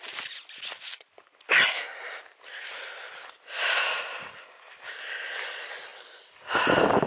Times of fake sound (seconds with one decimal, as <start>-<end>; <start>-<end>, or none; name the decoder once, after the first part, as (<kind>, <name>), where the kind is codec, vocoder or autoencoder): none